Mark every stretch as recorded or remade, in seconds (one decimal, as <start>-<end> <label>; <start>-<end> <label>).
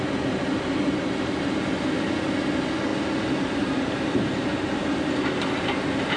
0.0-6.2 recorded